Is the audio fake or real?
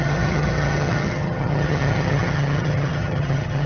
fake